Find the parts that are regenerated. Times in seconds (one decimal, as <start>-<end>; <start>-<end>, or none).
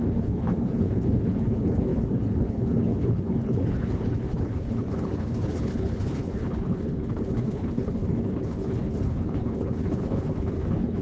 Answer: 0.0-11.0